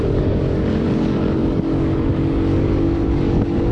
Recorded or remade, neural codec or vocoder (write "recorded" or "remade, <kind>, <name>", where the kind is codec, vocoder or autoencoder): remade, codec, DAC